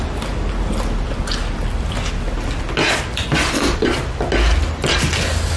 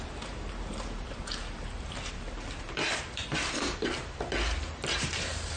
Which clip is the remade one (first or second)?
second